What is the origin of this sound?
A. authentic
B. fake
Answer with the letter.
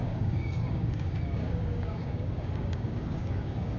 B